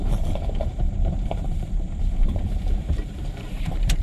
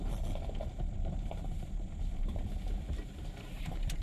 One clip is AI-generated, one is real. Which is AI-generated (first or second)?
first